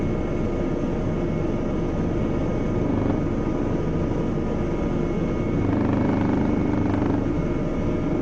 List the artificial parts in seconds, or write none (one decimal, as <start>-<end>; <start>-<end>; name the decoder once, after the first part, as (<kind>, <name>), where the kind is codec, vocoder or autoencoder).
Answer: none